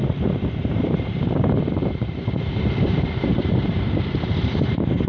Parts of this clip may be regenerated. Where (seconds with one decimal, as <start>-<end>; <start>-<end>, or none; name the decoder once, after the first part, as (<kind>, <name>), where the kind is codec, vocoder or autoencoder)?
0.0-5.1 (vocoder, BigVGAN v2)